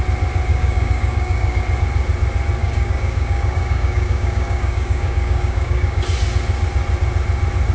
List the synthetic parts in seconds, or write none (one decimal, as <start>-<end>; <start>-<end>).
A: 0.5-1.6; 2.6-6.0